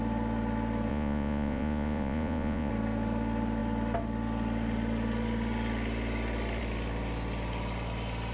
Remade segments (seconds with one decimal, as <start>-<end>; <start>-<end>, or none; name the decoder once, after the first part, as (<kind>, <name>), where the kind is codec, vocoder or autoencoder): 0.9-2.7 (vocoder, Vocos)